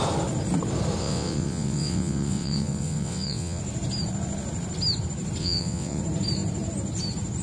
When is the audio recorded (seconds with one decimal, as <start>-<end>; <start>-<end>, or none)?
0.0-1.0; 3.6-5.4; 6.0-7.4